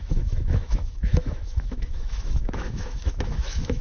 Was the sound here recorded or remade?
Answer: remade